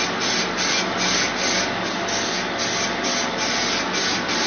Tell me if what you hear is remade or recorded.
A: recorded